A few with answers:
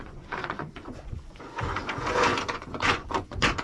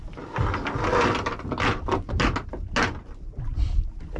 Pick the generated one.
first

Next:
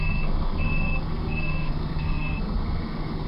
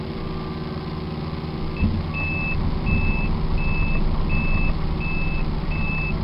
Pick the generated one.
first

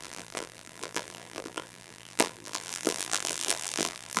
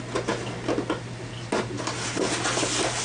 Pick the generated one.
first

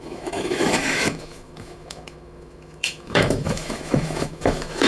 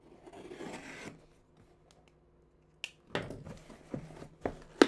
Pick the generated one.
first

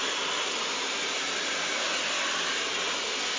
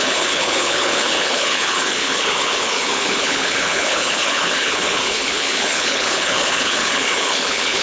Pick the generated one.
second